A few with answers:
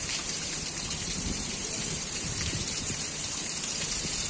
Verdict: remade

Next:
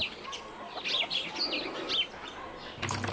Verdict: recorded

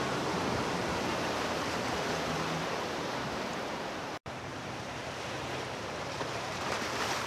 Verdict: remade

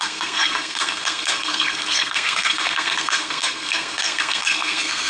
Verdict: remade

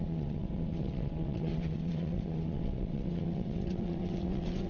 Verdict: remade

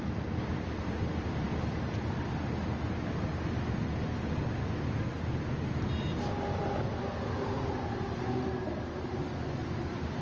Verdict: recorded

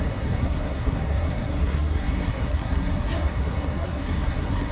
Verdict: remade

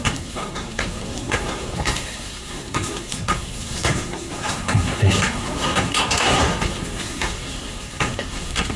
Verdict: remade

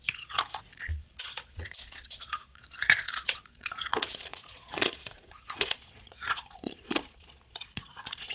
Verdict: remade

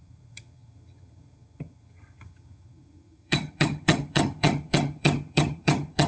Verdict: remade